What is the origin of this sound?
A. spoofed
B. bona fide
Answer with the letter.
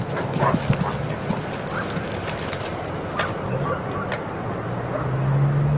B